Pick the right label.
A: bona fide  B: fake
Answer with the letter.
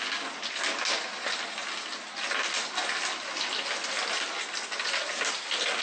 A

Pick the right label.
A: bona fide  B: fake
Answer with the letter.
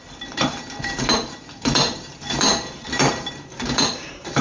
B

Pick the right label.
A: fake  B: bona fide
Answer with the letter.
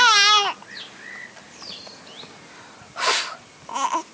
B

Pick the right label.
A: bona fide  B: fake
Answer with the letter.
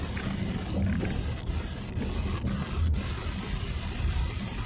A